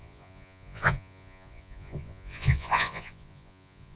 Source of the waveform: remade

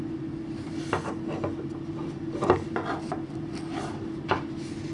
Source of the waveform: recorded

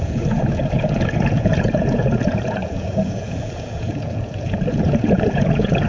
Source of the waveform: remade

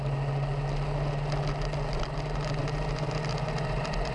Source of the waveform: recorded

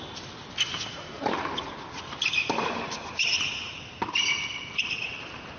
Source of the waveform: recorded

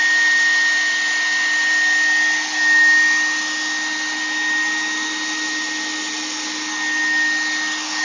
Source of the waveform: recorded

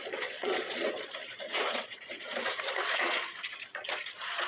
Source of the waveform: remade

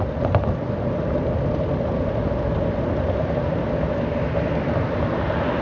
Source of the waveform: recorded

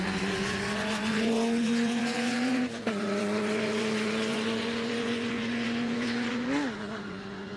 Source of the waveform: remade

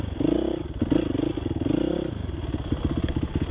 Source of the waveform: recorded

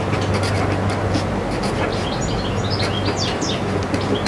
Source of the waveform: recorded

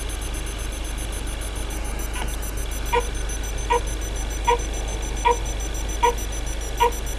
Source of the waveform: recorded